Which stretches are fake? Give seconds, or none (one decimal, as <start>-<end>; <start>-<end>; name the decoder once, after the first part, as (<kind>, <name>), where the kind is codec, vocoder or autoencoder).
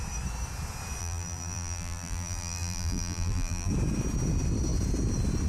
1.0-3.7 (vocoder, BigVGAN v2)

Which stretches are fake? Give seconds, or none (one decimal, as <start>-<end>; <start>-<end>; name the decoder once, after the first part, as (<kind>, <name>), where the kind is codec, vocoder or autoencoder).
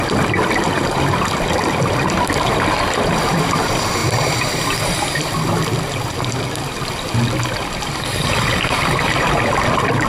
0.0-10.1 (vocoder, BigVGAN v2)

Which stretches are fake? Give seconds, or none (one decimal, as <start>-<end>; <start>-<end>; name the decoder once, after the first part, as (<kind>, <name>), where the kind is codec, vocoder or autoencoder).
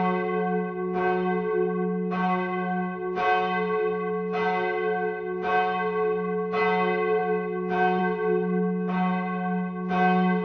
none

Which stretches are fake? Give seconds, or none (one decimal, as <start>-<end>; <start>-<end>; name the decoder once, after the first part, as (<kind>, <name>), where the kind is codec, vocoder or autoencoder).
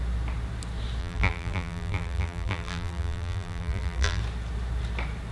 1.0-4.2 (vocoder, BigVGAN v2)